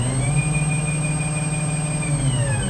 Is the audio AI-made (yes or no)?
no